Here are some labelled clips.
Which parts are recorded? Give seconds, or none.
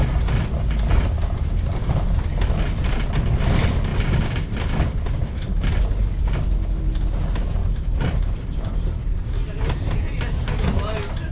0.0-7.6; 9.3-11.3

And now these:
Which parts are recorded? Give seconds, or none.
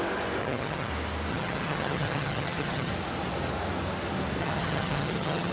0.0-0.4; 0.9-1.3; 2.9-4.4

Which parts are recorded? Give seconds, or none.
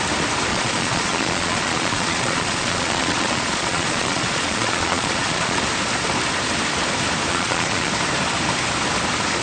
0.0-0.5; 5.6-7.3; 7.9-9.4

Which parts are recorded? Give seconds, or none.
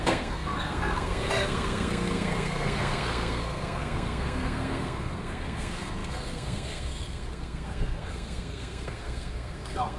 none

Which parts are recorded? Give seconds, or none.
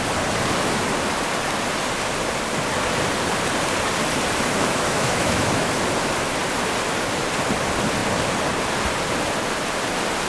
0.0-4.6; 5.7-10.3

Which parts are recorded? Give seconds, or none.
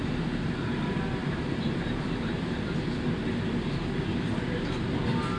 0.0-1.2; 2.6-5.4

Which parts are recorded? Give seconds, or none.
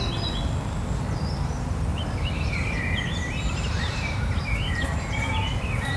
0.0-1.9; 5.5-6.0